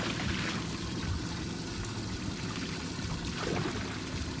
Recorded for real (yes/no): yes